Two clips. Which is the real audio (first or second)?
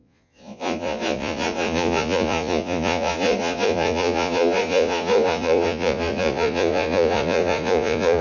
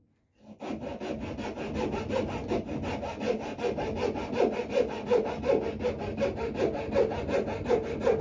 second